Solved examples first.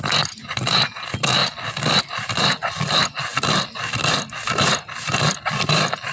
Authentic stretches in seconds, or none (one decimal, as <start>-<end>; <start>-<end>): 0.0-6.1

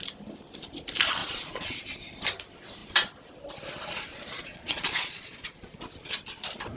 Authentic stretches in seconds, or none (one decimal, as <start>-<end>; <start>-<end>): 0.0-1.2; 1.8-4.1; 5.8-6.8

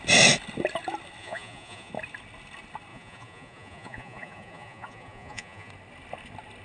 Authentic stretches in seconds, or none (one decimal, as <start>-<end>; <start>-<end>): 0.0-1.2; 1.9-2.9; 5.7-6.6